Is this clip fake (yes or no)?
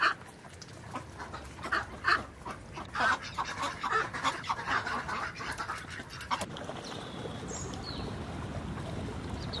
no